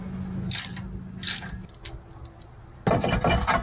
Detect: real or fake real